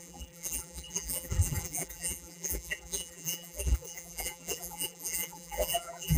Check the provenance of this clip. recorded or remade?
remade